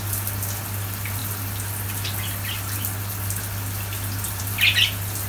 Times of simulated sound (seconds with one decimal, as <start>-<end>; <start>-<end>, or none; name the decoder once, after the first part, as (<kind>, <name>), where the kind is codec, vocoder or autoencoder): none